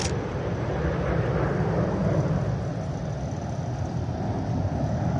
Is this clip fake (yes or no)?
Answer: no